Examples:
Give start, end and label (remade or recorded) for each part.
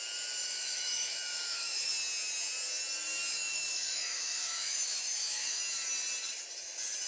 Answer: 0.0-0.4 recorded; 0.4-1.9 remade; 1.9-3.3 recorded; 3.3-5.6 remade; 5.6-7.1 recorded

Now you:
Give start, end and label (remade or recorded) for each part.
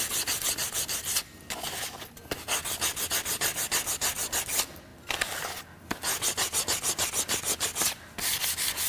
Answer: 0.0-8.9 recorded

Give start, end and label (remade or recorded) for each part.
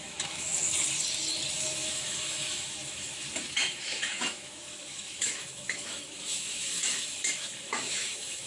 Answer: 0.0-0.5 remade; 0.5-1.5 recorded; 1.5-8.5 remade